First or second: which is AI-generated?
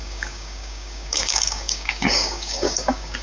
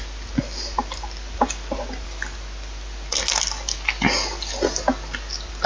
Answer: first